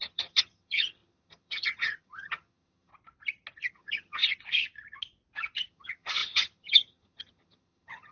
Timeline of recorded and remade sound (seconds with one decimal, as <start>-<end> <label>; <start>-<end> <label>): 0.0-2.9 remade; 2.9-3.7 recorded; 3.7-4.2 remade; 4.2-5.7 recorded; 5.7-8.1 remade